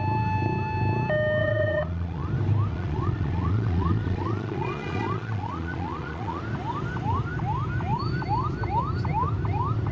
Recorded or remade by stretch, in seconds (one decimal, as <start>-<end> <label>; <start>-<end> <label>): 0.0-1.4 recorded; 1.4-2.3 remade; 2.3-2.7 recorded; 2.7-6.4 remade; 6.4-9.9 recorded